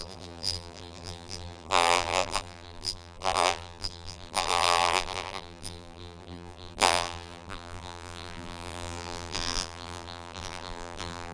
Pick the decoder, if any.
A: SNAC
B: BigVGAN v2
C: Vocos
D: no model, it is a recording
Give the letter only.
B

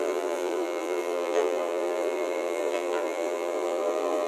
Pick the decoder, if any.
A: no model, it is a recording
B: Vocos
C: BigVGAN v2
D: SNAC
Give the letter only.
C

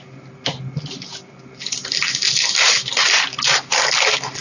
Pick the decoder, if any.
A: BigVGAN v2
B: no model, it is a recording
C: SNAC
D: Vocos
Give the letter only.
B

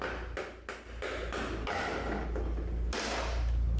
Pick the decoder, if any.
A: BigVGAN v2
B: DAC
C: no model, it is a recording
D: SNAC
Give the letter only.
C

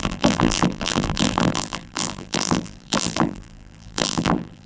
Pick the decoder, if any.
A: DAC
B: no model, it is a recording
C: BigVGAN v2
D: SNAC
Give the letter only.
C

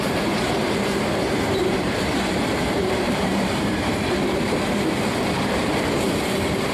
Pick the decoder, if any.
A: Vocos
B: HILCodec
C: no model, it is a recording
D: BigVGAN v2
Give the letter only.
D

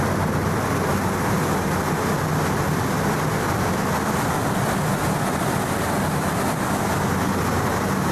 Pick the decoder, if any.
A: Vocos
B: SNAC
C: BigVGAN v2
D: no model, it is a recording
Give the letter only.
D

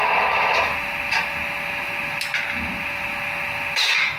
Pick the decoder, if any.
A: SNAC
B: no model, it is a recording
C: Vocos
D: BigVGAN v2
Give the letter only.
B